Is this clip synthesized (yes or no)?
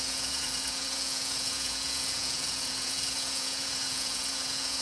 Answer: yes